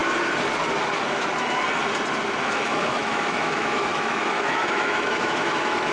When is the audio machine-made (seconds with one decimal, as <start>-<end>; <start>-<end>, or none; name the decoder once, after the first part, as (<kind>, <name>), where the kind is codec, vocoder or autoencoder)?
2.4-5.9 (autoencoder, DAC-VAE)

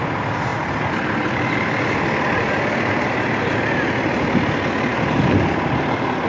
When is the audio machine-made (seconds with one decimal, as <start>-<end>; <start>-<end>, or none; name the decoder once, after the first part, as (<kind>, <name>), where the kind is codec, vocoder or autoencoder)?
none

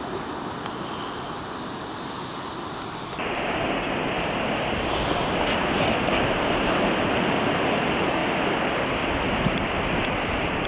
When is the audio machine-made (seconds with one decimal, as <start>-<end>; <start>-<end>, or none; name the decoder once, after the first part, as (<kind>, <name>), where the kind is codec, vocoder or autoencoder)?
none

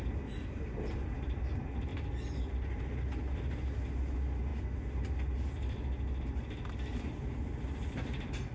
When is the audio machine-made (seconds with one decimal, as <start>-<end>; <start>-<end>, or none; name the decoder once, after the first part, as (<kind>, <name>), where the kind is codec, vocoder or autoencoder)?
none

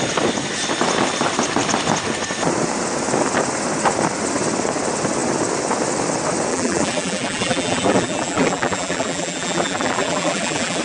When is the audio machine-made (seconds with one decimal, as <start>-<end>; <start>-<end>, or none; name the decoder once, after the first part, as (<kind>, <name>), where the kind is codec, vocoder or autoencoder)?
6.5-10.8 (vocoder, BigVGAN v2)

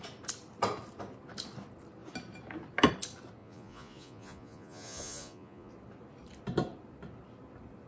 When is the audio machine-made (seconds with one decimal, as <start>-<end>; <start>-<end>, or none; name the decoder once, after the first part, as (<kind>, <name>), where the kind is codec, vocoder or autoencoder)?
3.4-5.7 (vocoder, Vocos)

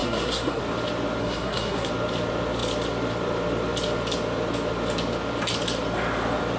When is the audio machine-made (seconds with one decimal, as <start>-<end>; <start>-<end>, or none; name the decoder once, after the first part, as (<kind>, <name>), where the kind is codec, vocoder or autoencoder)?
0.0-0.6 (codec, SNAC); 1.2-1.9